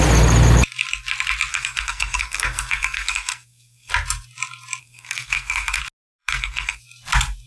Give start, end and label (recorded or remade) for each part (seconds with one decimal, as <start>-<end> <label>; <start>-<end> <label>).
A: 0.0-1.5 recorded; 1.5-3.9 remade; 3.9-4.8 recorded; 4.8-5.8 remade; 5.8-6.2 recorded; 6.2-6.8 remade; 6.8-7.5 recorded